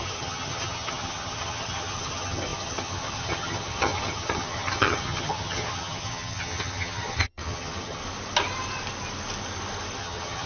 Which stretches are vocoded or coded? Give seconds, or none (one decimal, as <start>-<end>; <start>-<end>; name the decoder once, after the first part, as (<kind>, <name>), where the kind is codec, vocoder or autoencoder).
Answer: 0.0-8.0 (vocoder, HiFi-GAN); 10.0-10.5